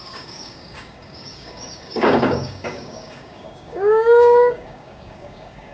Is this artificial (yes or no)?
yes